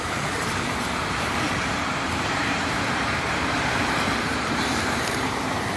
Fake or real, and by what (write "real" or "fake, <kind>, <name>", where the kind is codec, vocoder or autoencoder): fake, vocoder, BigVGAN v2